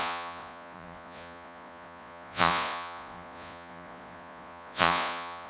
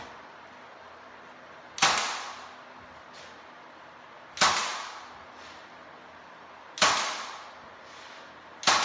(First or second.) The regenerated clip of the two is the first